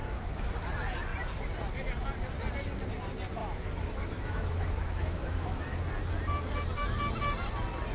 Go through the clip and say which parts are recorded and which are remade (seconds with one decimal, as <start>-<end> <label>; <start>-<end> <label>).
0.0-0.7 remade; 0.7-3.4 recorded; 3.4-5.8 remade; 5.8-7.9 recorded